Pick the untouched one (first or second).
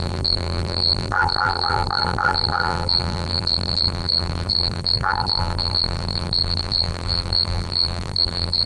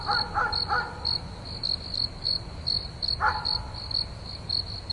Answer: second